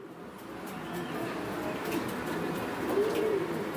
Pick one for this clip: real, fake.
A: real